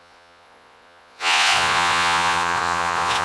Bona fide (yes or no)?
no